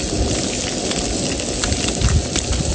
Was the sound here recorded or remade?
recorded